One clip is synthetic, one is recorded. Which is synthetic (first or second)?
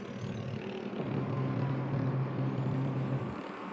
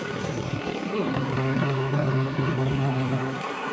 second